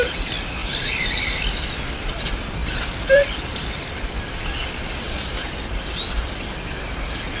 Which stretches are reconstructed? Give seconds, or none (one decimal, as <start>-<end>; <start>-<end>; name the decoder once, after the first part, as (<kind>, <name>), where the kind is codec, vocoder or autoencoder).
2.6-6.2 (vocoder, BigVGAN v2)